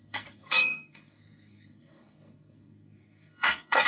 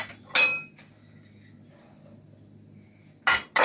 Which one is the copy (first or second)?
first